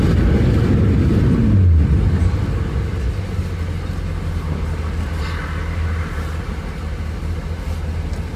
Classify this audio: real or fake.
real